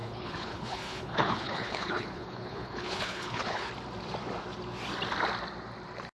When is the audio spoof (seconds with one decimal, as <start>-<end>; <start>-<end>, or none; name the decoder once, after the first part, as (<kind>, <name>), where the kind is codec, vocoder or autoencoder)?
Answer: 0.0-3.7 (codec, HILCodec)